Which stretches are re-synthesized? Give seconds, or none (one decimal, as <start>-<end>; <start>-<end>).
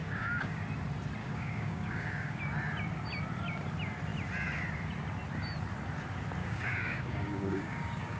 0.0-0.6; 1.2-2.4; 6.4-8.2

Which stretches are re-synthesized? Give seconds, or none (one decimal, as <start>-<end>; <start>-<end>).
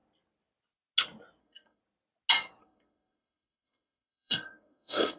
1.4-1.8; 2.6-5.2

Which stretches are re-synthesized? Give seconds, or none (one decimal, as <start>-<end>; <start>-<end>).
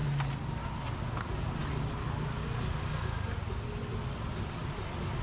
none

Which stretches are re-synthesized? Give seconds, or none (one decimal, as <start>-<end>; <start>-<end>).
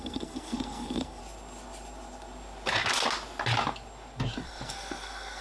0.0-1.2; 4.4-5.4